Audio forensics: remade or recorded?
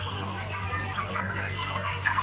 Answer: remade